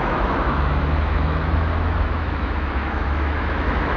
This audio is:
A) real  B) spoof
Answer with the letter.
B